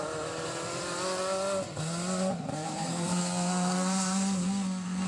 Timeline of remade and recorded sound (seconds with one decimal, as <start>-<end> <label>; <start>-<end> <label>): 0.0-2.5 recorded; 2.5-5.1 remade